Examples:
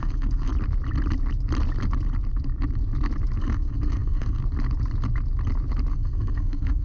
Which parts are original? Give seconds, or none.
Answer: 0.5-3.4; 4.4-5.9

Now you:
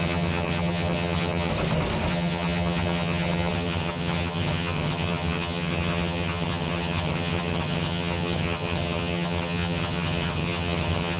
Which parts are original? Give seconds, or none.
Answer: 1.5-2.1

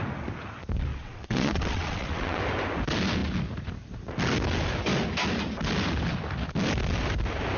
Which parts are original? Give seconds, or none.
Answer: 0.0-0.9; 2.4-7.6